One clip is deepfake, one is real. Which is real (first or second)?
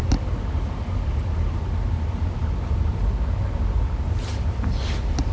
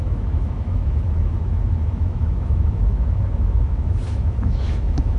first